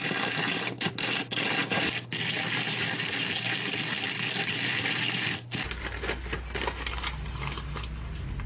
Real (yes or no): yes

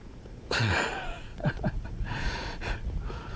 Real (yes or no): no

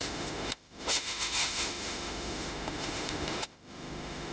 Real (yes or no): no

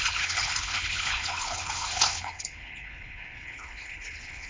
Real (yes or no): no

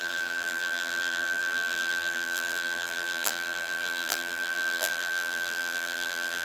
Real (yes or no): no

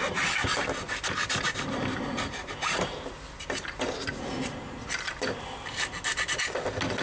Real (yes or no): yes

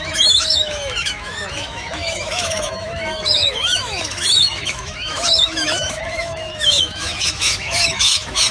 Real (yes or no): no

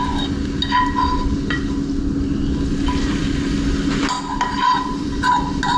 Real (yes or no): yes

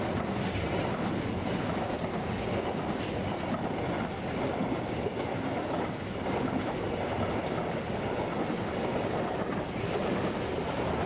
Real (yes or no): yes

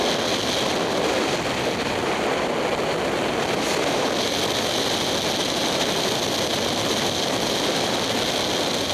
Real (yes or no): yes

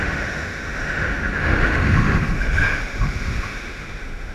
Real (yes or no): no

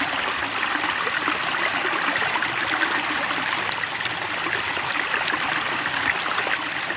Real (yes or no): yes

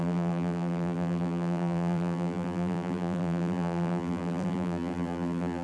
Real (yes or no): no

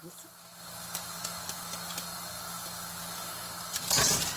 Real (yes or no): yes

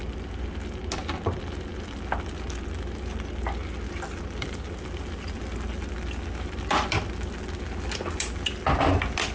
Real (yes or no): yes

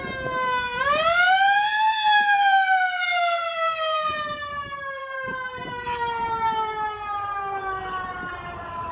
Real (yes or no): no